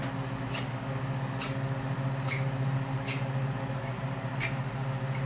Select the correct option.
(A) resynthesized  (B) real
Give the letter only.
B